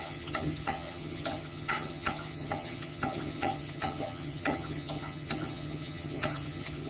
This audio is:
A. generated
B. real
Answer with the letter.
A